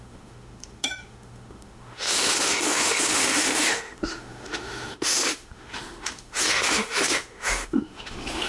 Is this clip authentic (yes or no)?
no